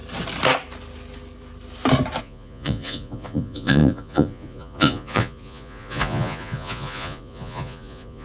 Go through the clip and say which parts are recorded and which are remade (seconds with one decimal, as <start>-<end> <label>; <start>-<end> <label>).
0.0-2.2 recorded; 2.2-8.2 remade